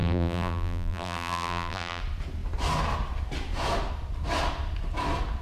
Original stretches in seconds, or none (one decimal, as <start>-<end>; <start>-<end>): 2.0-5.4